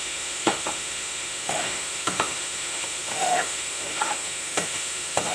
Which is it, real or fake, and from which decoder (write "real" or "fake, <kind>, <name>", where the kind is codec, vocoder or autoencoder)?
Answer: fake, autoencoder, DAC-VAE